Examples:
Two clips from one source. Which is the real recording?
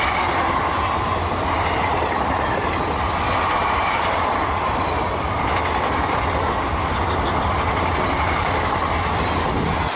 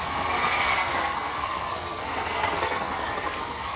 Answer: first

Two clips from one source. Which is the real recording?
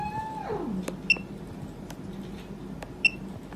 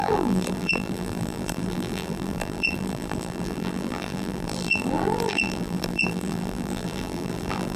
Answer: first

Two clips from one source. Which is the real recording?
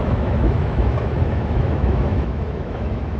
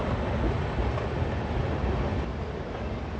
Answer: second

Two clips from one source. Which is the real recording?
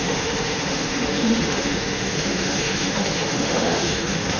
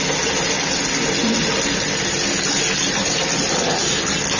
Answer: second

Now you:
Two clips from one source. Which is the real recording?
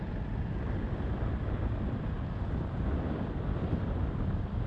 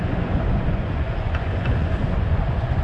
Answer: first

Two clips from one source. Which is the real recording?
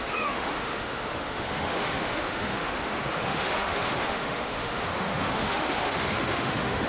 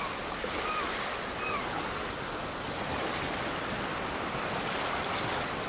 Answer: second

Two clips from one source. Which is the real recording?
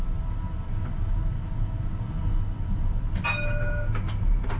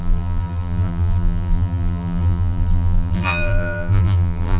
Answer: first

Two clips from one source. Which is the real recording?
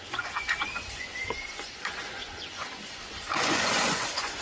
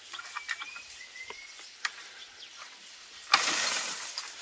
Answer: second